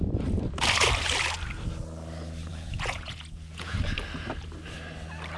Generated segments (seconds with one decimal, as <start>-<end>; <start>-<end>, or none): 2.5-3.8

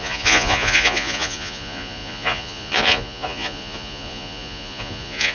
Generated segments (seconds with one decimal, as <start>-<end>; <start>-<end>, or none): 0.0-5.3

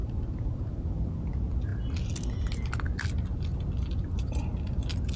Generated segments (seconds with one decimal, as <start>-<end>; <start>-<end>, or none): 0.0-0.7